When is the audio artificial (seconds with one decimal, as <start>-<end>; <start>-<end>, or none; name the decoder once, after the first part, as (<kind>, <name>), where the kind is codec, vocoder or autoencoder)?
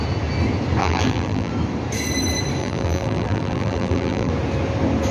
0.8-1.5 (vocoder, BigVGAN v2); 2.6-4.3